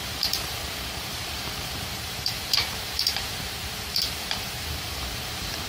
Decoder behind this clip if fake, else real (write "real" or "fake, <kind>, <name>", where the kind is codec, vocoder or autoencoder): fake, vocoder, BigVGAN v2